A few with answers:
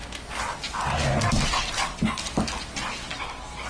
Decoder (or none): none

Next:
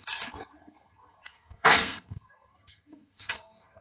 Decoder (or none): codec, SNAC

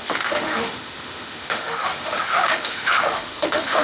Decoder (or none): autoencoder, DAC-VAE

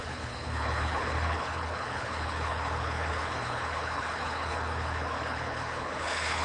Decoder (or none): codec, HILCodec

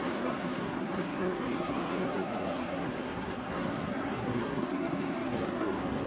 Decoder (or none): codec, SNAC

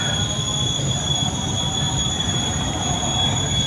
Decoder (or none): none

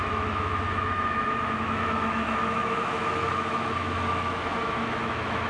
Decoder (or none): autoencoder, DAC-VAE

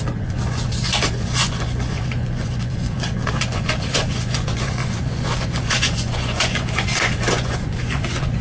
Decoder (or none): vocoder, Vocos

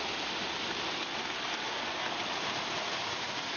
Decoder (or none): none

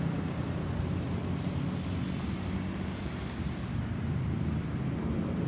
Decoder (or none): none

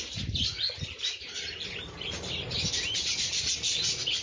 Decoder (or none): none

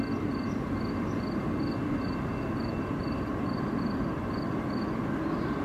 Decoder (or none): none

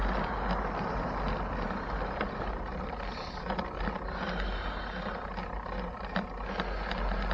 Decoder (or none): none